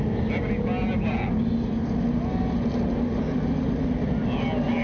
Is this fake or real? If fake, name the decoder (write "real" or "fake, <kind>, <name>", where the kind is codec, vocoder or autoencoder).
real